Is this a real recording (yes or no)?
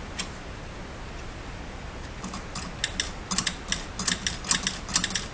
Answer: yes